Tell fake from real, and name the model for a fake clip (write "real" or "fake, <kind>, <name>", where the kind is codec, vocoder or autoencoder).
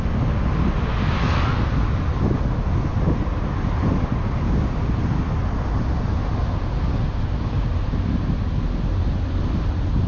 real